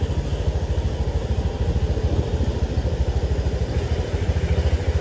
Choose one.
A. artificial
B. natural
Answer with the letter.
B